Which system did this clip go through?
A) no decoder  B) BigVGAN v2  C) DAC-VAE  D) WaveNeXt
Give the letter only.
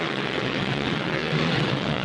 D